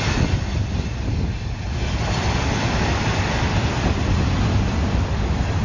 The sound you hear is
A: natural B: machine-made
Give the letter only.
A